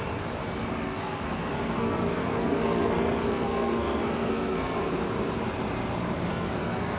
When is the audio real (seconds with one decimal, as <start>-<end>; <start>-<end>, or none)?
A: 0.0-0.7; 4.9-6.3